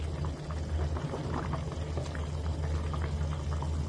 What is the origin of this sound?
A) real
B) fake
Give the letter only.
A